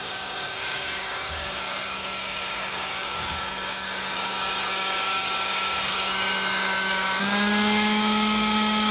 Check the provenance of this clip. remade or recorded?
remade